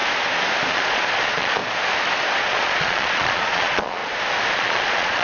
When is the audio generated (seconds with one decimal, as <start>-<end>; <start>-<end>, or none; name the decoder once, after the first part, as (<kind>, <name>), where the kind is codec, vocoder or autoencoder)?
0.7-1.6 (vocoder, Vocos); 2.4-4.0; 4.5-5.2